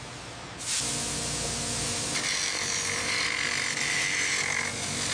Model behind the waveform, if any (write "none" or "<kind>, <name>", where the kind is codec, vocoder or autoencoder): none